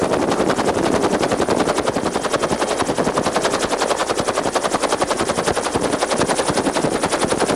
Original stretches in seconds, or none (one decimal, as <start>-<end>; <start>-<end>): 0.8-4.0; 5.9-7.6